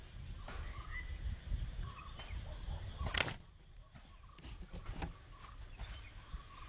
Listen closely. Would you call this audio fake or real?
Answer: real